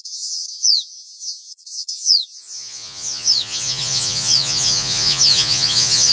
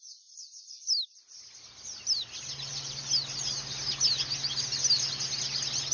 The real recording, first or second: second